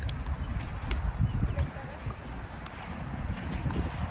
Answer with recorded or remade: recorded